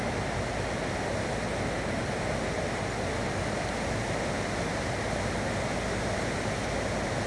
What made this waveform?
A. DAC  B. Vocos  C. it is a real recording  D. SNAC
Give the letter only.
C